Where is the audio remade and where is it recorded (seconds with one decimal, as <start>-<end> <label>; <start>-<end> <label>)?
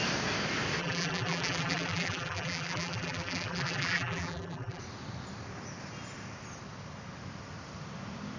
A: 0.0-0.8 recorded; 0.8-4.8 remade; 4.8-8.4 recorded